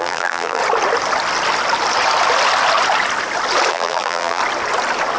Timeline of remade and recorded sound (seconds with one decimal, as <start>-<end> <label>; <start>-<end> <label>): 0.0-0.6 remade; 0.6-3.7 recorded; 3.7-4.4 remade; 4.4-5.2 recorded